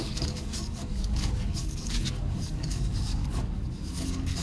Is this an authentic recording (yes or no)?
no